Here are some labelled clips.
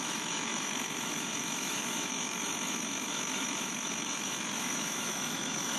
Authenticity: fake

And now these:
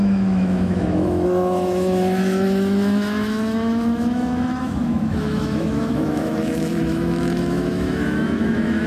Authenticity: fake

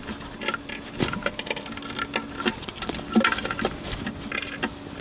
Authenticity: real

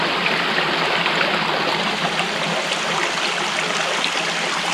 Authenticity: real